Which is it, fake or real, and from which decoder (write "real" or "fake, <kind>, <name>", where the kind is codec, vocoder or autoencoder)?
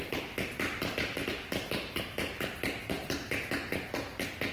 real